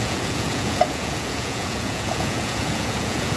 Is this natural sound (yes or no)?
no